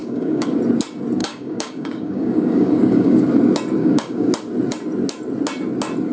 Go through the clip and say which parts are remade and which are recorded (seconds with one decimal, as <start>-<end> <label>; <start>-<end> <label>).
0.0-0.6 remade; 0.6-1.2 recorded; 1.2-3.2 remade; 3.2-3.8 recorded; 3.8-4.3 remade; 4.3-6.1 recorded